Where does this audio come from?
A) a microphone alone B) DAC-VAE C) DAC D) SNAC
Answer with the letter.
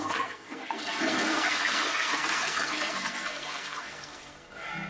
D